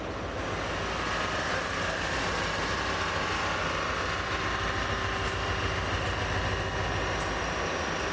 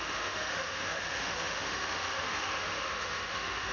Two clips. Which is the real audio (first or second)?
first